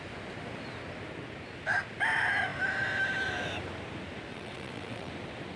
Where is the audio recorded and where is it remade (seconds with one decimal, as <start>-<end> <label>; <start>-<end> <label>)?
0.0-4.3 recorded; 4.3-5.1 remade; 5.1-5.6 recorded